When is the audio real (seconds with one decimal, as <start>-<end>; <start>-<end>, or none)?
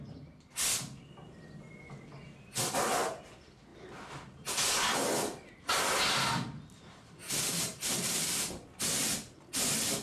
0.0-7.2; 8.4-10.0